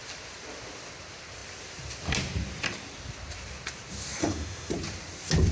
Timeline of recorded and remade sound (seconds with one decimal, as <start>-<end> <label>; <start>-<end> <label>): 0.0-4.2 recorded; 4.2-4.7 remade; 4.7-5.5 recorded